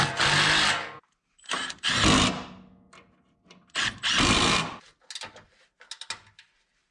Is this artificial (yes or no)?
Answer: no